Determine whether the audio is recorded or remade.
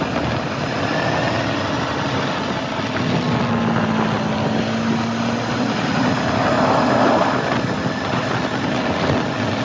recorded